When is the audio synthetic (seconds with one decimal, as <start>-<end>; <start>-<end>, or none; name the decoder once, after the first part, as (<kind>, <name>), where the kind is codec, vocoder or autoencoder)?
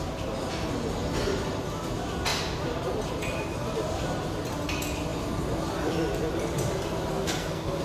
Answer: 7.1-7.8 (codec, SNAC)